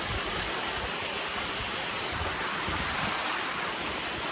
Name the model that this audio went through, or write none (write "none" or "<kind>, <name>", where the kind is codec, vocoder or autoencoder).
none